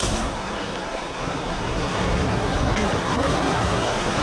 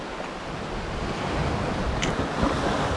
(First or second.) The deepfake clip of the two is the first